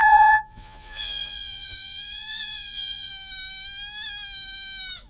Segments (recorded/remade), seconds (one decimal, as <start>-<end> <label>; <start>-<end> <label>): 0.0-3.1 remade; 3.1-5.1 recorded